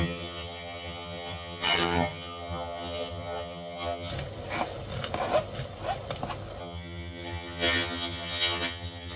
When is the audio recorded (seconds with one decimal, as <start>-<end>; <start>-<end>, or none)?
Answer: 4.1-6.6